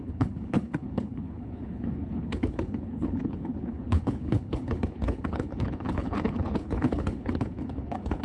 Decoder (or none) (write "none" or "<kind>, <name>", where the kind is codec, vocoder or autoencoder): codec, HILCodec